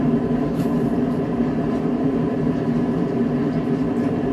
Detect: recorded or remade remade